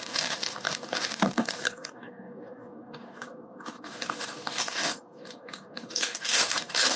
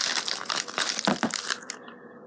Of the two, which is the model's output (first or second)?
first